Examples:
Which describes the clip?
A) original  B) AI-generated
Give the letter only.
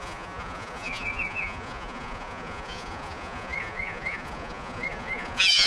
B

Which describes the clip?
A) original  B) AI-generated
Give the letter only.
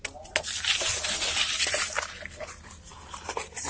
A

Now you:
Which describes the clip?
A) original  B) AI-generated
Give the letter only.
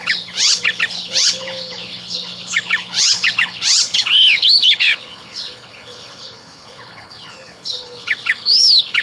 B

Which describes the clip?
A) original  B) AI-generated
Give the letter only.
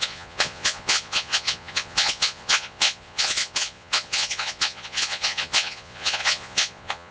B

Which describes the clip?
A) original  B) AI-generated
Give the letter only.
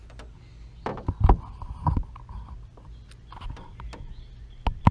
A